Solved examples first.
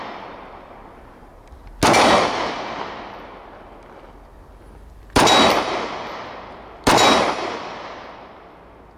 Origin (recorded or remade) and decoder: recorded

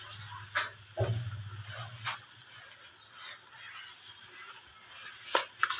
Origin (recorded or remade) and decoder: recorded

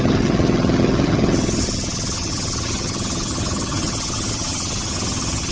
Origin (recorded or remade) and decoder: remade, vocoder, HiFi-GAN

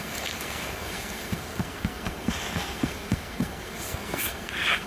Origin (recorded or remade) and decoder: remade, codec, SNAC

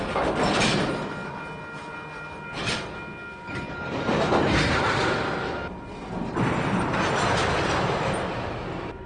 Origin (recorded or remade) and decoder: recorded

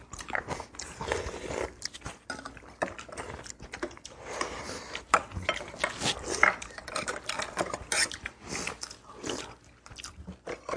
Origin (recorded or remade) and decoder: recorded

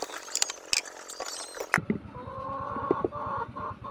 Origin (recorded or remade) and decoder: recorded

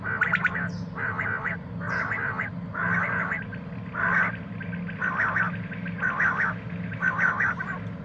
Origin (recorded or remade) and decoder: recorded